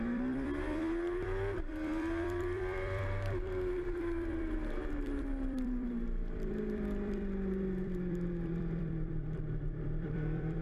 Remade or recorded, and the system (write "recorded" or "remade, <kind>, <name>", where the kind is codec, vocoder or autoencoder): remade, vocoder, BigVGAN v2